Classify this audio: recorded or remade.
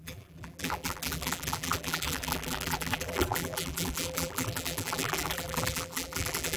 remade